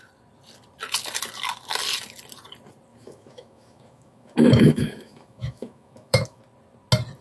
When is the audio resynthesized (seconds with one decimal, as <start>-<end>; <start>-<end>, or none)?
2.9-6.4